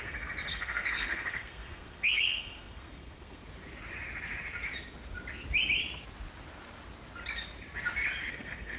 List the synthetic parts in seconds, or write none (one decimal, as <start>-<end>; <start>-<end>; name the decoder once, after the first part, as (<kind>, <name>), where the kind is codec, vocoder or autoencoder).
0.0-3.4 (codec, SNAC); 8.3-8.8